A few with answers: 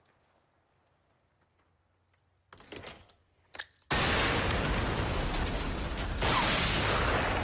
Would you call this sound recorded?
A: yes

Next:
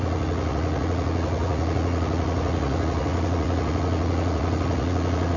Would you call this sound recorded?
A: no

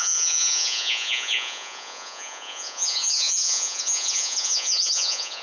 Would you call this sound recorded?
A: no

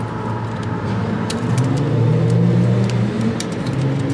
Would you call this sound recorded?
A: yes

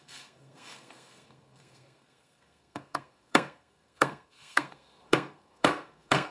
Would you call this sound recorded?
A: no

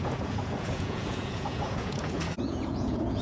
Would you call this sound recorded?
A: no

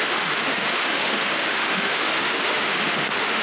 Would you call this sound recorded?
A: no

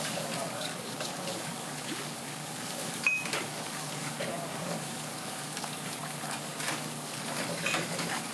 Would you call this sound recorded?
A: no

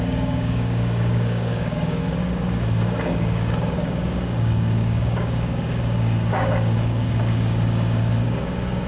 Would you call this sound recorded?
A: no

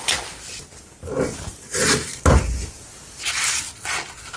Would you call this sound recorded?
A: yes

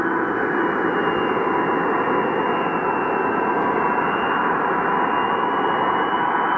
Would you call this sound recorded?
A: yes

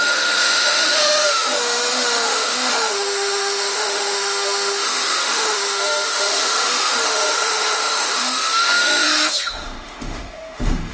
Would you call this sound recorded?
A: no